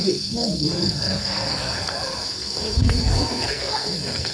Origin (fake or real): fake